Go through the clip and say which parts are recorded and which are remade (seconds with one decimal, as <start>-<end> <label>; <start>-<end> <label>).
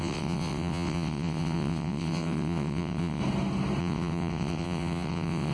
0.0-3.2 remade; 3.2-3.8 recorded; 3.8-5.5 remade